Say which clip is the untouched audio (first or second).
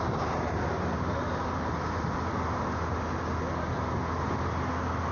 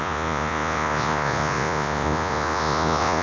first